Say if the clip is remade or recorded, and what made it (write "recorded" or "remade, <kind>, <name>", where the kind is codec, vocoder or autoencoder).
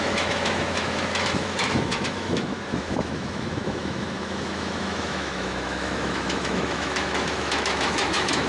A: remade, autoencoder, DAC-VAE